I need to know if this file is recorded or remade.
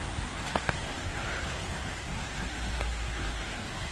remade